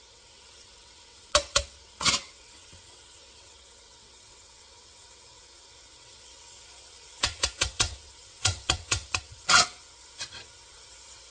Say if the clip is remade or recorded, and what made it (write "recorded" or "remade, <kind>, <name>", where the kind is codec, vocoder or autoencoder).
remade, vocoder, WaveNeXt